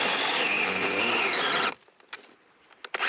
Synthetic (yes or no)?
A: no